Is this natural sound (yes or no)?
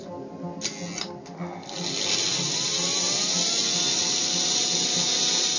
yes